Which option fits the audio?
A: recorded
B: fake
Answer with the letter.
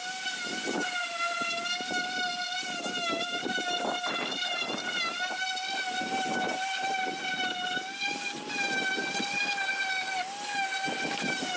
A